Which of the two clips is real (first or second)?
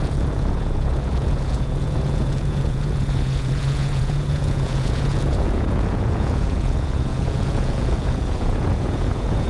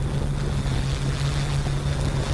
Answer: second